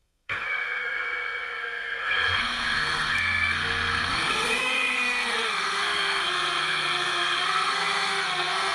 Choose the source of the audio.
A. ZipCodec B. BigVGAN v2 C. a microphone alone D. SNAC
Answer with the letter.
D